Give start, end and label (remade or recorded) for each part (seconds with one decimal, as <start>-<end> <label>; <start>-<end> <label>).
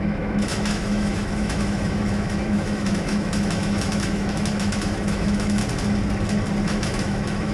0.0-5.6 remade; 5.6-6.7 recorded; 6.7-7.5 remade